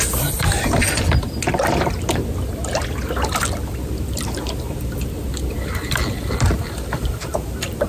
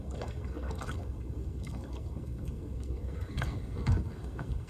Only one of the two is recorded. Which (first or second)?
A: first